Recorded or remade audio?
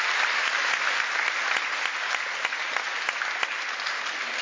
recorded